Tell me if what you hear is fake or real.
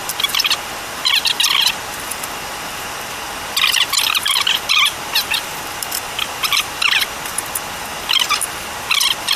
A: real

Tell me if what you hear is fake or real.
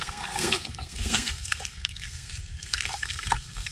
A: fake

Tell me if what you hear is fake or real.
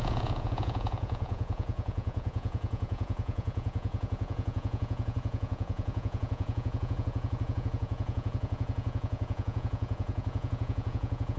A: fake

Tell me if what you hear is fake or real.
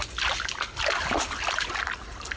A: real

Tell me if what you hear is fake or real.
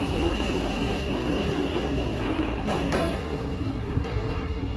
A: fake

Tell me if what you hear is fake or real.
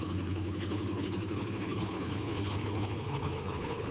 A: fake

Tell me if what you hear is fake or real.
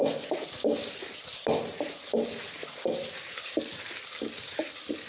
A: real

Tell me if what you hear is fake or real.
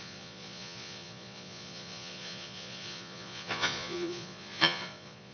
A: fake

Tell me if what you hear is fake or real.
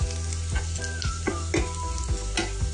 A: real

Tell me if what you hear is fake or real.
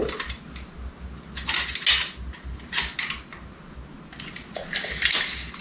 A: real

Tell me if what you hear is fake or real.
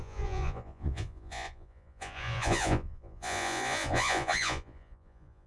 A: fake